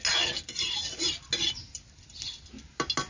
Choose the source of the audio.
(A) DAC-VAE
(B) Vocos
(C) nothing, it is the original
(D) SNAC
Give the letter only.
C